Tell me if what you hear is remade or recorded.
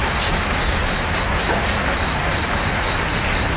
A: recorded